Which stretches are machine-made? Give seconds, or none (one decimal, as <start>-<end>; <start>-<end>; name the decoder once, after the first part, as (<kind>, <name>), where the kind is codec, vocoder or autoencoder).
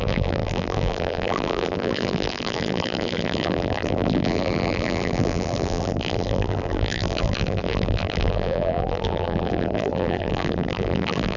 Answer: 0.0-11.4 (vocoder, BigVGAN v2)